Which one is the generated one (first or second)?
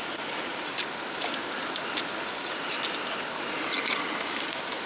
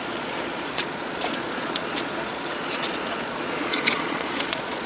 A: second